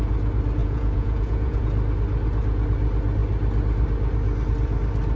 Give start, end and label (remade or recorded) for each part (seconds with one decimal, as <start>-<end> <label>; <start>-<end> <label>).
0.0-0.6 recorded; 0.6-1.6 remade; 1.6-5.2 recorded